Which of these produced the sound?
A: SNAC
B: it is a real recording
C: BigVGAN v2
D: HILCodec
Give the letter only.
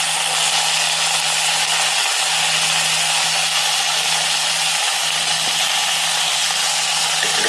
B